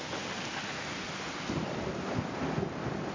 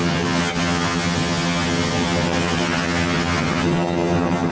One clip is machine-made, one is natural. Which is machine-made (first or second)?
second